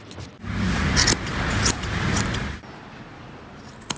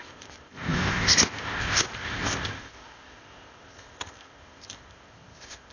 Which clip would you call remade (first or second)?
second